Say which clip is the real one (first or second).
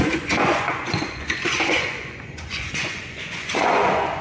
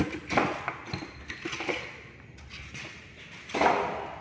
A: second